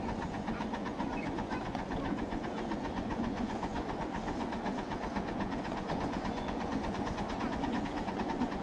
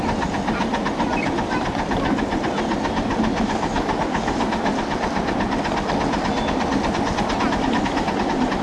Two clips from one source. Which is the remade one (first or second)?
first